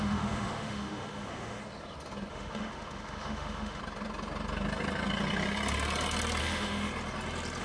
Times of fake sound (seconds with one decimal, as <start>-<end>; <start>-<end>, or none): 0.0-1.6; 2.3-3.8; 6.4-6.9